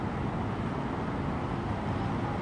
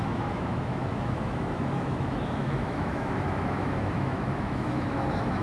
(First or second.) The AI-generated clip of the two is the second